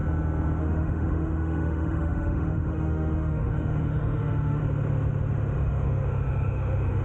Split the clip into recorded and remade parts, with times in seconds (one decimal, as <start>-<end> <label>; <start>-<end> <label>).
0.0-0.6 recorded; 0.6-4.6 remade; 4.6-5.7 recorded; 5.7-7.0 remade